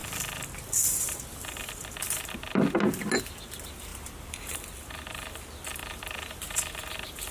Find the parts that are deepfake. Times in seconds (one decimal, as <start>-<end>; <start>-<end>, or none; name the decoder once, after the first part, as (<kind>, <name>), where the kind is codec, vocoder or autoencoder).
0.0-2.3 (vocoder, BigVGAN v2); 3.9-5.3; 5.8-6.8